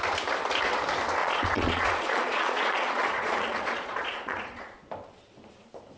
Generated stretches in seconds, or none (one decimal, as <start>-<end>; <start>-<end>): 1.2-4.8